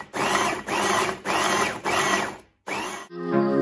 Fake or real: real